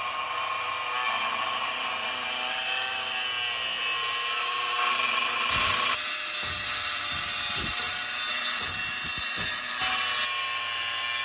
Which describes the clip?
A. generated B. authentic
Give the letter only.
B